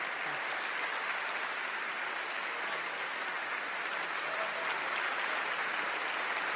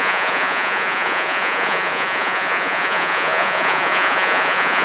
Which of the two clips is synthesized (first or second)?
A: second